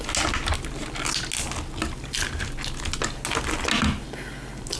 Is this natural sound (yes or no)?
yes